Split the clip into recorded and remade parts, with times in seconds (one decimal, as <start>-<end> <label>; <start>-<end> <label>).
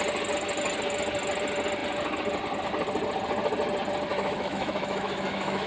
0.0-4.1 recorded; 4.1-5.7 remade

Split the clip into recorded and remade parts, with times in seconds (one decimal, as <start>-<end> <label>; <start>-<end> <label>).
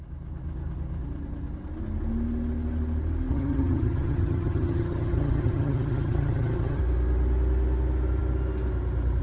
0.0-3.3 recorded; 3.3-6.8 remade; 6.8-9.2 recorded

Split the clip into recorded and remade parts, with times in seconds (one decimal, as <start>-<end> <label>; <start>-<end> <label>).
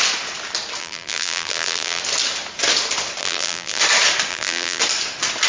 0.0-0.8 recorded; 0.8-2.0 remade; 2.0-3.2 recorded; 3.2-3.8 remade; 3.8-4.3 recorded; 4.3-4.8 remade; 4.8-5.5 recorded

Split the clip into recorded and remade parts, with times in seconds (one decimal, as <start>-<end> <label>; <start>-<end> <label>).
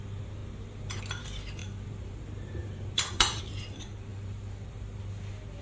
0.0-1.6 recorded; 1.6-3.4 remade; 3.4-4.1 recorded; 4.1-5.0 remade; 5.0-5.6 recorded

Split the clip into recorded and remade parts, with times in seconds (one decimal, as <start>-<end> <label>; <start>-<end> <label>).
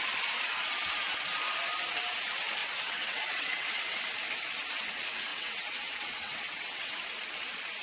0.0-2.6 recorded; 2.6-4.0 remade; 4.0-5.3 recorded; 5.3-6.9 remade; 6.9-7.8 recorded